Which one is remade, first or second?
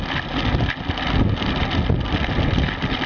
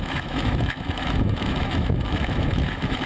second